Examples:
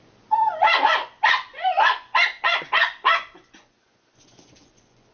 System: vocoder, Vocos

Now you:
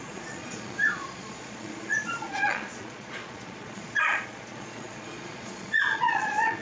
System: vocoder, Vocos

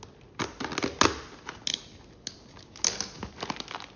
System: none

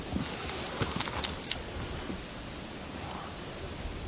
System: none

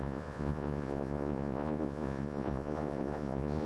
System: vocoder, Vocos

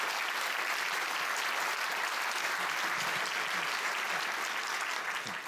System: none